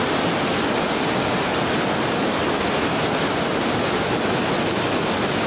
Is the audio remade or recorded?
recorded